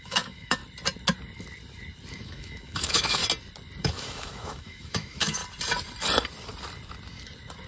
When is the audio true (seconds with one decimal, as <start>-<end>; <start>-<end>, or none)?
0.6-2.1; 3.2-3.8; 5.4-7.7